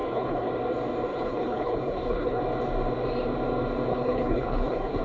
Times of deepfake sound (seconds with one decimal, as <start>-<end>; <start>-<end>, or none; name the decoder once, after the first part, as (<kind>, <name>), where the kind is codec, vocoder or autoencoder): 0.0-0.5 (codec, HILCodec); 1.1-2.4; 3.9-5.0